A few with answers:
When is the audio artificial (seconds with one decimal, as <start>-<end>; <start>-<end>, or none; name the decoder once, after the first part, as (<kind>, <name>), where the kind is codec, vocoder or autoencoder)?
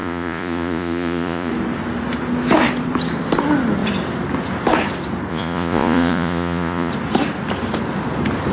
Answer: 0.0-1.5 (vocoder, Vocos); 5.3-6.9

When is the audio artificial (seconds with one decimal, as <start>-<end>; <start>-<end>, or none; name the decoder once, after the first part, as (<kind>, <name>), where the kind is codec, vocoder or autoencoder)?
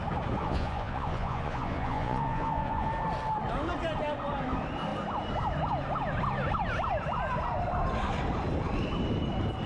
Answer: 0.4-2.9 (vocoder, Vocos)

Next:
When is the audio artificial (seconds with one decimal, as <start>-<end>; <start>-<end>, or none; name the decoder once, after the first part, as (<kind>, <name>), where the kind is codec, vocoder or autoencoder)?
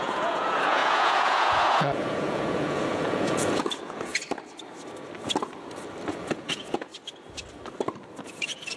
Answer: 0.0-4.1 (vocoder, Vocos); 6.1-6.9; 8.2-8.8